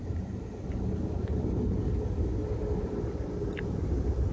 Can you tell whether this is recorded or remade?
recorded